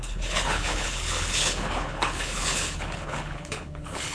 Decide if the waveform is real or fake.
fake